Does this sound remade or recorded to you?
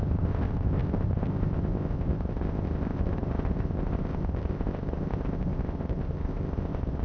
remade